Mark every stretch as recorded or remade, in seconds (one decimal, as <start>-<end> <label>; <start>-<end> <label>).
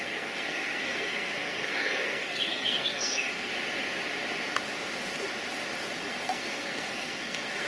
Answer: 0.0-3.5 remade; 3.5-6.0 recorded; 6.0-7.7 remade